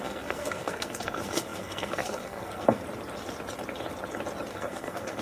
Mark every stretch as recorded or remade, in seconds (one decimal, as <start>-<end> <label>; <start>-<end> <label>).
0.0-2.8 remade; 2.8-4.5 recorded; 4.5-5.2 remade